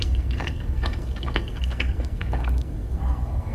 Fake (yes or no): yes